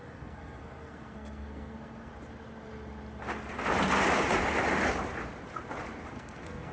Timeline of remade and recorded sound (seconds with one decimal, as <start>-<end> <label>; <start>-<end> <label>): 0.0-2.1 remade; 2.1-6.1 recorded; 6.1-6.7 remade